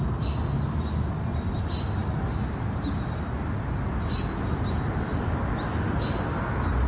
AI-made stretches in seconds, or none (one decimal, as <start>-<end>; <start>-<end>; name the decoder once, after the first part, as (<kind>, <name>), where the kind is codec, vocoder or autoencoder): none